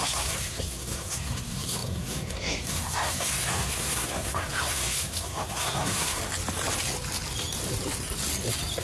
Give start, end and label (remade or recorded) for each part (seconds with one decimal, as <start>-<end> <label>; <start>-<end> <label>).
0.0-6.2 remade; 6.2-8.8 recorded

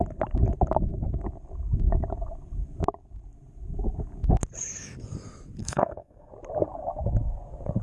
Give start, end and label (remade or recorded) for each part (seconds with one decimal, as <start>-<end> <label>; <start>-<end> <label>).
0.0-5.6 recorded; 5.6-6.3 remade; 6.3-7.8 recorded

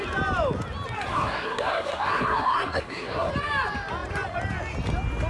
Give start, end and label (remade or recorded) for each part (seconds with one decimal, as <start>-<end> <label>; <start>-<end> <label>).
0.0-1.1 recorded; 1.1-3.3 remade; 3.3-5.3 recorded

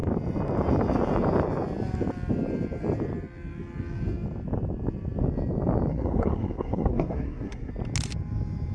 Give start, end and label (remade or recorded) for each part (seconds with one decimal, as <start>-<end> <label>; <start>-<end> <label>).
0.0-5.9 recorded; 5.9-7.7 remade; 7.7-8.7 recorded

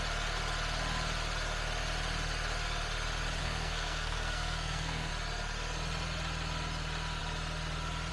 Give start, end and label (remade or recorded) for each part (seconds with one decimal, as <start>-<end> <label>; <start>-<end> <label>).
0.0-3.4 recorded; 3.4-5.1 remade; 5.1-8.1 recorded

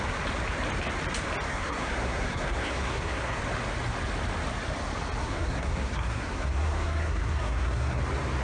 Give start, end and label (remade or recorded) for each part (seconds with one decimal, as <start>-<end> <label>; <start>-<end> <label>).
0.0-1.5 recorded; 1.5-3.4 remade; 3.4-5.2 recorded; 5.2-8.0 remade; 8.0-8.4 recorded

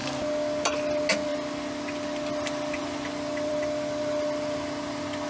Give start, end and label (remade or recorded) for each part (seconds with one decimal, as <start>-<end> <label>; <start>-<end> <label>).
0.0-5.3 recorded

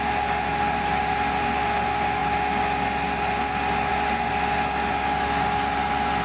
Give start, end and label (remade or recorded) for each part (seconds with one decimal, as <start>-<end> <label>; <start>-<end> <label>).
0.0-6.2 recorded